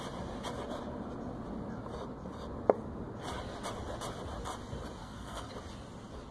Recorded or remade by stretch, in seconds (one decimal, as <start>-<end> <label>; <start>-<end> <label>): 0.0-5.0 recorded; 5.0-5.5 remade; 5.5-6.3 recorded